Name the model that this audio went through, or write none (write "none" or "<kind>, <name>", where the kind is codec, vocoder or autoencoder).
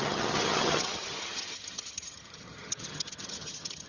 vocoder, HiFi-GAN